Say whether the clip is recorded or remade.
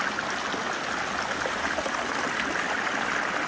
recorded